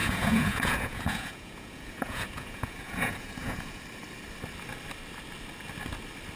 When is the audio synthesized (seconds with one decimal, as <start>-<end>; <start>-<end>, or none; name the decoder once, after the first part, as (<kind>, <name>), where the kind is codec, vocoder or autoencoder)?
0.0-3.8 (vocoder, Vocos)